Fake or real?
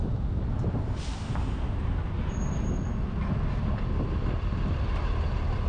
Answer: real